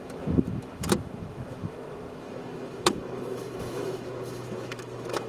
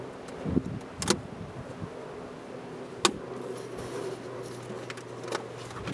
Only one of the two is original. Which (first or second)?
second